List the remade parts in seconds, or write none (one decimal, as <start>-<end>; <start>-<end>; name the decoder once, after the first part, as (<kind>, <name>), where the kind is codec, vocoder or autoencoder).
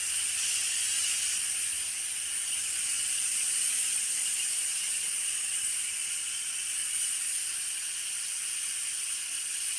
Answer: none